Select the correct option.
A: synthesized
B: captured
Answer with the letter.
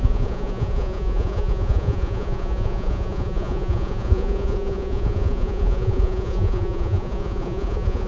A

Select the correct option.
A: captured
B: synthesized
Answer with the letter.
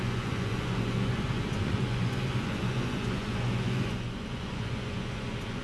B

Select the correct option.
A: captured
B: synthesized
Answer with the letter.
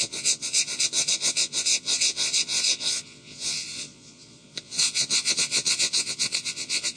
B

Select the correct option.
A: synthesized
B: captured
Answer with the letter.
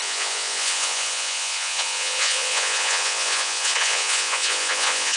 A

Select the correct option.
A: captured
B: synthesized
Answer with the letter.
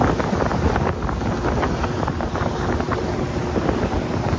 A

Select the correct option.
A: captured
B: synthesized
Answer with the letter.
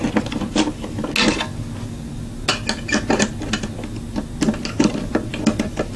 A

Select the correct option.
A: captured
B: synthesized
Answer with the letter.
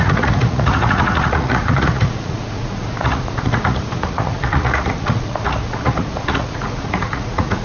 B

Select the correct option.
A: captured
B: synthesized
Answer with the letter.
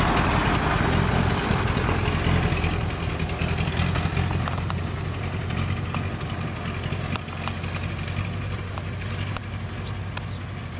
A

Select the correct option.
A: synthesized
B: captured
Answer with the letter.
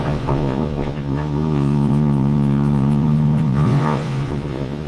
A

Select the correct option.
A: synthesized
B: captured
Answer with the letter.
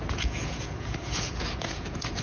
A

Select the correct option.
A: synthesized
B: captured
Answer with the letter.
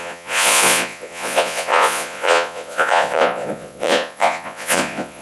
A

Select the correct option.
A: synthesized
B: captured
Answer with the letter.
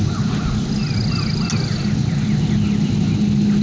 B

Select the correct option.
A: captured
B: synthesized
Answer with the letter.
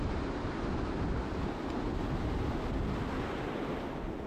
A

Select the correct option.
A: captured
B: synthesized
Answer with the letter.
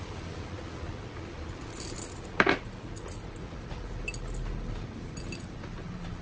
A